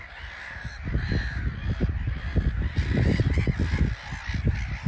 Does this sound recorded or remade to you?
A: recorded